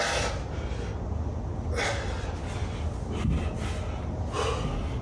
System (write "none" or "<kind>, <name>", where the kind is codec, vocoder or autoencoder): none